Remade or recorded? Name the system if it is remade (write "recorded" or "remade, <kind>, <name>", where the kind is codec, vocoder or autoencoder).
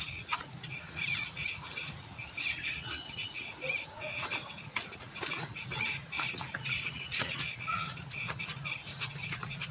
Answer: remade, vocoder, Vocos